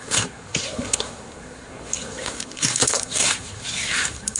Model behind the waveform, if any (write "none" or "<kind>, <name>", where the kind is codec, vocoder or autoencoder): codec, SNAC